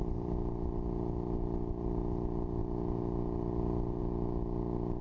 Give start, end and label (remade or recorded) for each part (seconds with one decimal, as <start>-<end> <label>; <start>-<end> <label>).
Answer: 0.0-5.0 recorded